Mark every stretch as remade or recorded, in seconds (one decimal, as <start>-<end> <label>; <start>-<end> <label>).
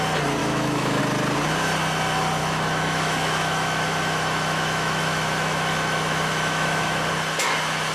0.0-0.4 recorded; 0.4-1.0 remade; 1.0-2.4 recorded; 2.4-7.1 remade; 7.1-7.9 recorded